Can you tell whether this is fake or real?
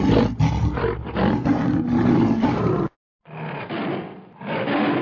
real